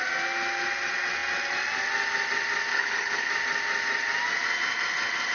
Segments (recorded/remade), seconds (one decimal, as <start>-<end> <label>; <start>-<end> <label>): 0.0-2.7 recorded; 2.7-3.3 remade; 3.3-5.3 recorded